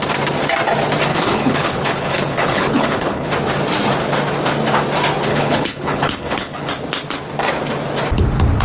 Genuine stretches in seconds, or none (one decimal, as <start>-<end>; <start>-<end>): 0.0-1.1; 3.3-5.3; 6.7-8.6